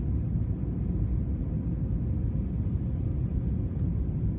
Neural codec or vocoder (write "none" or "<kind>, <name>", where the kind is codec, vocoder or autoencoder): none